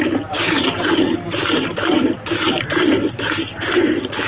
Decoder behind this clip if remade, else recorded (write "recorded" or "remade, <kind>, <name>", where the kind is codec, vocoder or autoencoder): remade, vocoder, BigVGAN v2